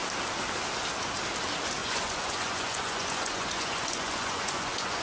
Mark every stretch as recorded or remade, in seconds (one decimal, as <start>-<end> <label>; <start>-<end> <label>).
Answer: 0.0-1.8 recorded; 1.8-5.0 remade